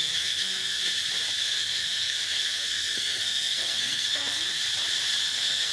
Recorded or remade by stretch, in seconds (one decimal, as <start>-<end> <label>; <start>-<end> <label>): 0.0-0.8 remade; 0.8-1.4 recorded; 1.4-4.6 remade; 4.6-5.2 recorded; 5.2-5.7 remade